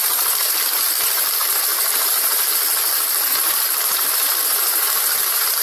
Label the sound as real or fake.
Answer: real